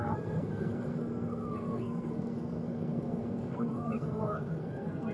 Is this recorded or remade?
remade